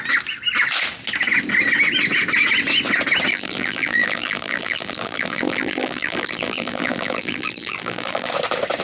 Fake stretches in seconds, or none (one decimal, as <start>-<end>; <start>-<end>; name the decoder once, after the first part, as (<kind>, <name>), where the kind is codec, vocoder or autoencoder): 3.3-8.3 (vocoder, BigVGAN v2)